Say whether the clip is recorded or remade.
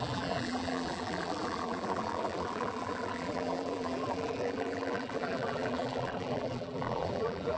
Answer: remade